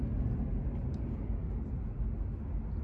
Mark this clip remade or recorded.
recorded